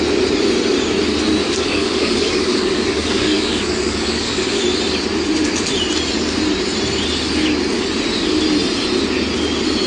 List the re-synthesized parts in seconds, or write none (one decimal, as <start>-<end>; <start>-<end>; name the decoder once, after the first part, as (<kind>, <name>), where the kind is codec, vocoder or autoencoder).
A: 1.4-4.6 (codec, DAC)